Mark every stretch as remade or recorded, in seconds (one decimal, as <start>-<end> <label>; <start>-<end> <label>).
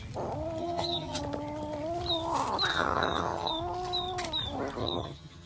0.0-0.6 recorded; 0.6-1.2 remade; 1.2-2.7 recorded; 2.7-3.5 remade; 3.5-4.8 recorded; 4.8-5.5 remade